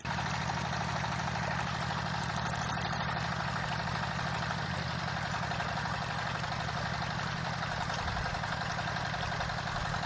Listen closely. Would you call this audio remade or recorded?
recorded